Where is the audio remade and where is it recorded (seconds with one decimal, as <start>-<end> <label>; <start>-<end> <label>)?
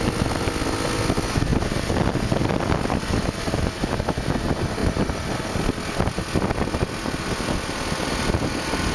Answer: 0.0-8.9 recorded